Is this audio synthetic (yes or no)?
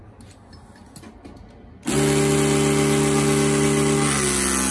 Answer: no